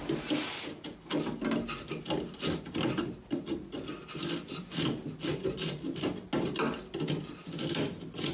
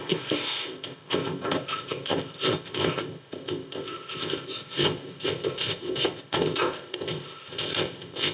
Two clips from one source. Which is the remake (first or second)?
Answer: second